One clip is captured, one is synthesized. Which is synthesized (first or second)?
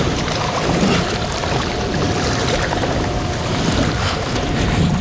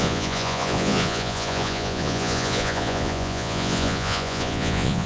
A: second